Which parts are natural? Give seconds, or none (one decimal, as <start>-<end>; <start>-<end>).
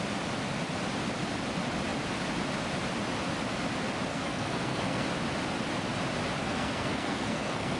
0.0-4.1; 5.1-6.4